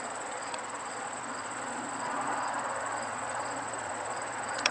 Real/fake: fake